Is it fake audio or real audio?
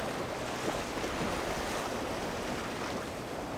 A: real